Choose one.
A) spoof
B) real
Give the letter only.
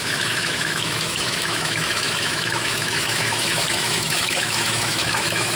A